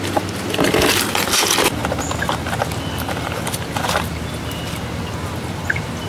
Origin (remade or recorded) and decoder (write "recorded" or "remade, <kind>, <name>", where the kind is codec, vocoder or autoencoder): recorded